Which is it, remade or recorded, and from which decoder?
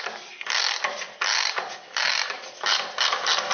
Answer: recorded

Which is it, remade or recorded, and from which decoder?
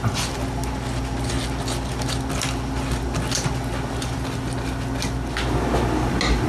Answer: recorded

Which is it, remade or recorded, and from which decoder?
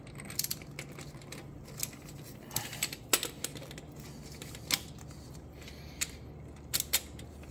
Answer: recorded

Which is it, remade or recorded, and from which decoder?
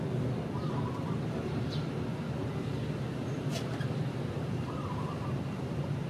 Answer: remade, vocoder, BigVGAN v2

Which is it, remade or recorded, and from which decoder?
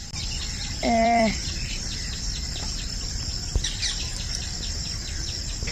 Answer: remade, vocoder, BigVGAN v2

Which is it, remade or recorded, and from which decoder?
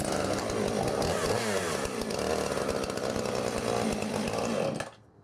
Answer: recorded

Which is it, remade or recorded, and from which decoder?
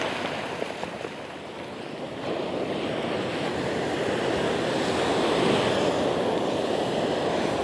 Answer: recorded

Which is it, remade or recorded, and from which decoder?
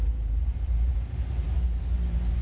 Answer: remade, vocoder, BigVGAN v2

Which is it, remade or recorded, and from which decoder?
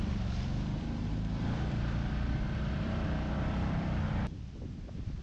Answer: remade, vocoder, BigVGAN v2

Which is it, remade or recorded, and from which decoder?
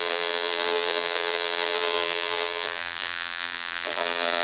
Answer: remade, vocoder, BigVGAN v2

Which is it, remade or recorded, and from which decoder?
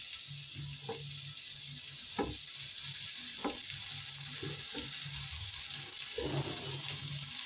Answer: recorded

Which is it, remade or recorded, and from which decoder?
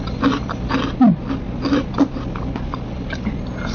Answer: recorded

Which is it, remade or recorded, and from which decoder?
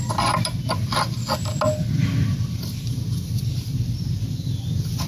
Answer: recorded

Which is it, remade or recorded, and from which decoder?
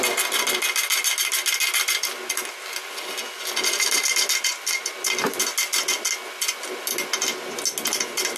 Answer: recorded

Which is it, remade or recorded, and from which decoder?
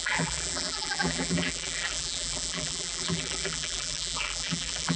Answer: remade, vocoder, BigVGAN v2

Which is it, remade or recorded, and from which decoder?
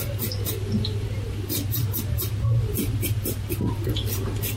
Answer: recorded